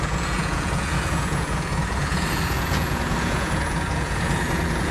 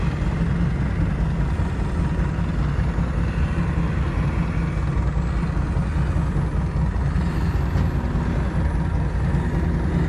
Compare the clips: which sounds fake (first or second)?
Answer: first